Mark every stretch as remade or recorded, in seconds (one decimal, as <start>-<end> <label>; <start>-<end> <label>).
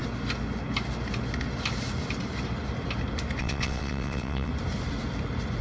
0.0-3.4 recorded; 3.4-4.5 remade; 4.5-5.6 recorded